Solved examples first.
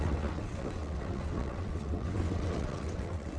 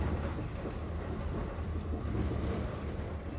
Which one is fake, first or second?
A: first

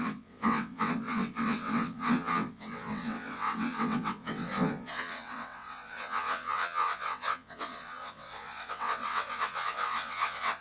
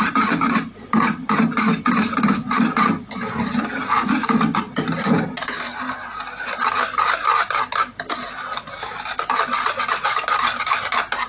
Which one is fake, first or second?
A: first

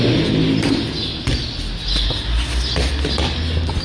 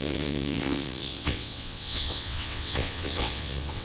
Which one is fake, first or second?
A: second